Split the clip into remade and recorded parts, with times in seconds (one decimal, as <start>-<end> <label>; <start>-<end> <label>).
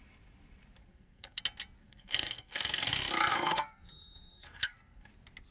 0.0-0.8 recorded; 0.8-1.4 remade; 1.4-1.8 recorded; 1.8-2.9 remade; 2.9-3.3 recorded; 3.3-5.1 remade; 5.1-5.5 recorded